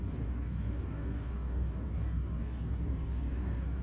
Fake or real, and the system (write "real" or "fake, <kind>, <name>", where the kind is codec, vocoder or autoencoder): fake, codec, DAC